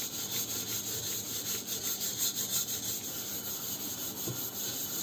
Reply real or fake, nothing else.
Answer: real